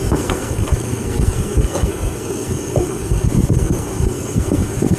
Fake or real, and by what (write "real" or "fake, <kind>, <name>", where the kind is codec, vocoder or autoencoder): fake, codec, SNAC